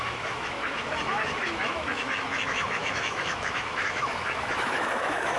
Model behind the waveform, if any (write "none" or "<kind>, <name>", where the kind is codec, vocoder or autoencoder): autoencoder, DAC-VAE